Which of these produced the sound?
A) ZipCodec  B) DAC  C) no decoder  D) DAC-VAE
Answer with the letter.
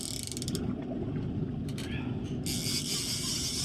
C